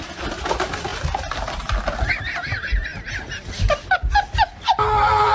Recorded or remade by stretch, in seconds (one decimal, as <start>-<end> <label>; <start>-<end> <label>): 0.0-5.3 recorded

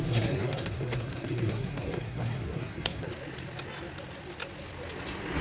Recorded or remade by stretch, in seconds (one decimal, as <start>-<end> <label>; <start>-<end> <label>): 0.0-3.1 remade; 3.1-5.4 recorded